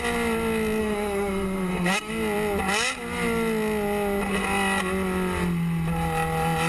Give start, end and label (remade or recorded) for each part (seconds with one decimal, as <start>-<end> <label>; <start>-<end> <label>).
0.0-0.8 recorded; 0.8-2.1 remade; 2.1-6.7 recorded